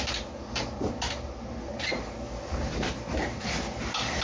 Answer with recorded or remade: recorded